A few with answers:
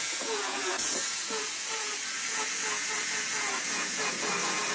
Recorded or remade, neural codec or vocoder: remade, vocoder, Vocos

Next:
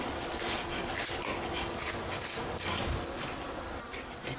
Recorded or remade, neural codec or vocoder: recorded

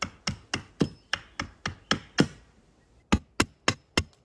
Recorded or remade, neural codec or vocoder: recorded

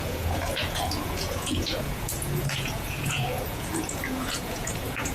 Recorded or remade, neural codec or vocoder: remade, vocoder, Vocos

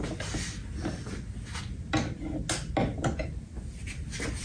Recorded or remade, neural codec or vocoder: recorded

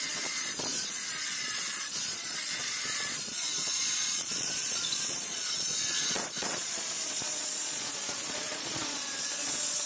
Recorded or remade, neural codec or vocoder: remade, vocoder, Vocos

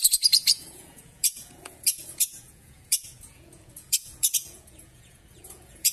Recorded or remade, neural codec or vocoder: remade, vocoder, Vocos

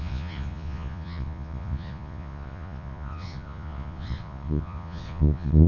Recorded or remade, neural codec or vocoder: remade, vocoder, Vocos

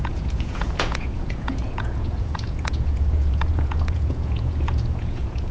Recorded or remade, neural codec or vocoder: remade, vocoder, Vocos